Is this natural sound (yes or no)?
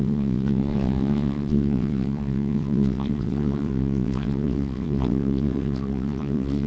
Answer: no